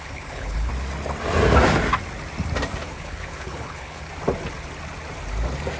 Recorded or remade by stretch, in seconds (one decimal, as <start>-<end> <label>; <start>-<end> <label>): 0.0-0.7 remade; 0.7-2.9 recorded; 2.9-4.1 remade; 4.1-5.8 recorded